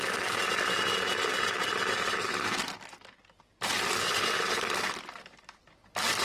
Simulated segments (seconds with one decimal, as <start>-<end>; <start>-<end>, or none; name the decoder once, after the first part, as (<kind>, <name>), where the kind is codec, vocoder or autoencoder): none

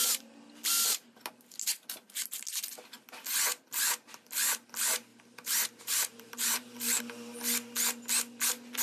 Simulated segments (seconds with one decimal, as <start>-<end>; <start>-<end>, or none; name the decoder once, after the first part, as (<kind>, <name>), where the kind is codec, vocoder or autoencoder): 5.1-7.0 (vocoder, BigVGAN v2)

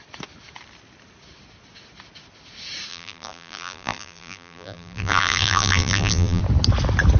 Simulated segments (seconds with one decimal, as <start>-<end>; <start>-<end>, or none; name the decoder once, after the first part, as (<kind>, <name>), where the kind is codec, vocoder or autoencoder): 2.9-6.4 (vocoder, BigVGAN v2)

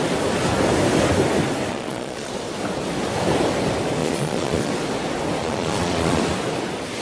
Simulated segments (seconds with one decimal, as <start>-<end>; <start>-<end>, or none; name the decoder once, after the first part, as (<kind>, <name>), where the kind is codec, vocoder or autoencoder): 1.7-2.3 (vocoder, Vocos); 4.0-4.7; 5.4-6.2

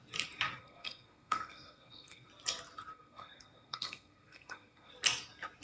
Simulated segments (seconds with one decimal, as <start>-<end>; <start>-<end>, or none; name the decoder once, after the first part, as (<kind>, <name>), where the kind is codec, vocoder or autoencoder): 0.6-2.3 (codec, SNAC); 2.9-4.9

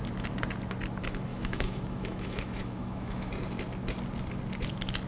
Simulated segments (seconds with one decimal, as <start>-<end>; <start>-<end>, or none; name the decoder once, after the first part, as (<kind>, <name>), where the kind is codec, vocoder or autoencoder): 1.3-3.3 (autoencoder, DAC-VAE)

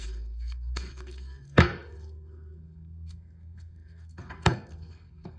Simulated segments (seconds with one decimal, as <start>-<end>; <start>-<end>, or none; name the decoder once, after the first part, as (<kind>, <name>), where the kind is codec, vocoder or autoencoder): 0.0-5.4 (codec, SNAC)